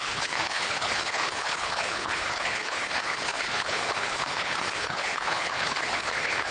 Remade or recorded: remade